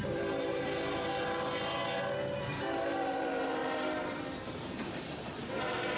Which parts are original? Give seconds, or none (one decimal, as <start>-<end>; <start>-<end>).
1.8-2.4